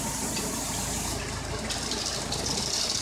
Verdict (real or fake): real